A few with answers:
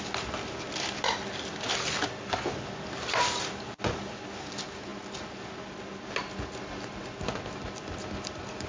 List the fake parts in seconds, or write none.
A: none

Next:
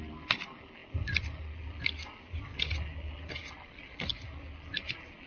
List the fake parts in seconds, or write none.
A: none

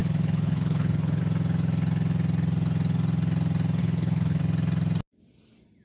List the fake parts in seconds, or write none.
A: 0.0-1.2 (codec, HILCodec); 3.8-4.4